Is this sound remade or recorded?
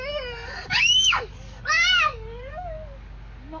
remade